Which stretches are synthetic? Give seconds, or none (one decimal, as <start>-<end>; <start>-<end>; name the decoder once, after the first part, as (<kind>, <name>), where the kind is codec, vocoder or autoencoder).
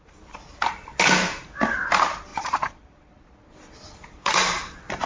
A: 2.3-4.3 (vocoder, Vocos)